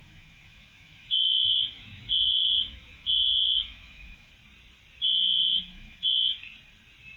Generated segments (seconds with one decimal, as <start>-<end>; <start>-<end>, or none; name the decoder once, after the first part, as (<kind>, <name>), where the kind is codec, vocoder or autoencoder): 0.0-4.3 (autoencoder, DAC-VAE); 5.4-6.2